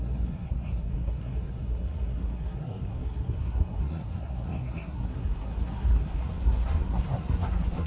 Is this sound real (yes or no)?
no